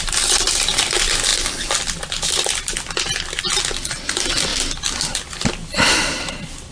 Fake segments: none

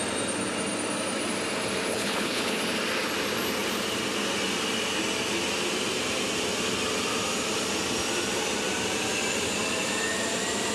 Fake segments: 1.9-2.6 (codec, HILCodec)

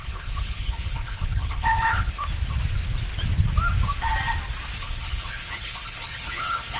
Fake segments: 0.0-2.2 (codec, HILCodec); 4.8-6.8

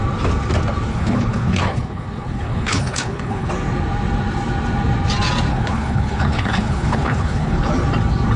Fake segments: 0.9-3.5 (codec, HILCodec); 5.5-7.7

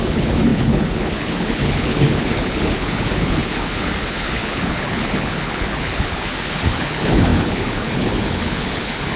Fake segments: 0.0-9.2 (codec, HILCodec)

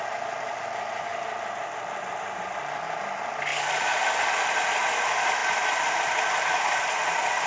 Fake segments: none

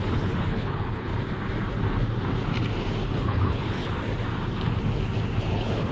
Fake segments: 0.0-1.1 (codec, HILCodec); 3.1-3.8; 5.4-5.9

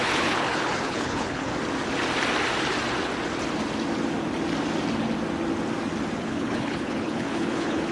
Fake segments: 0.0-1.5 (codec, HILCodec); 6.2-7.9